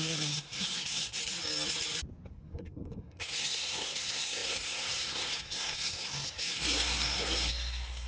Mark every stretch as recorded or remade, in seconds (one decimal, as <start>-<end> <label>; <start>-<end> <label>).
0.0-1.2 remade; 1.2-2.3 recorded; 2.3-8.1 remade